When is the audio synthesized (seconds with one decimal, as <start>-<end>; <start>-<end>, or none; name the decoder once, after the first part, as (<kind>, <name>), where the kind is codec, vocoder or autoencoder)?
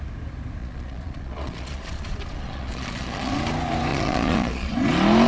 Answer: 0.6-3.3 (vocoder, Vocos); 3.9-4.7